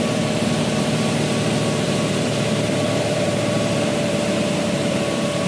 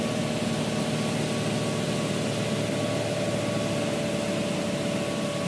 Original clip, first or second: second